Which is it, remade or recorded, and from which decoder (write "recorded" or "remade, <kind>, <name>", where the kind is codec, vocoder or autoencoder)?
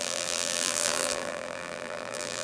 remade, vocoder, BigVGAN v2